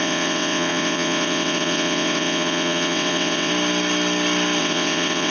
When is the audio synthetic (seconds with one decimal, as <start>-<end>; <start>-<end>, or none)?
0.0-3.5; 4.6-5.3